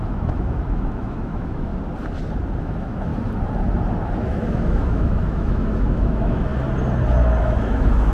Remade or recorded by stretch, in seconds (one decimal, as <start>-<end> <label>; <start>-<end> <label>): 0.0-1.7 remade; 1.7-2.6 recorded; 2.6-3.1 remade; 3.1-4.2 recorded; 4.2-6.5 remade; 6.5-7.4 recorded; 7.4-8.1 remade